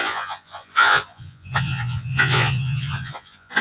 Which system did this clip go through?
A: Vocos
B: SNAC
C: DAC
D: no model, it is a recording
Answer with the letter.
A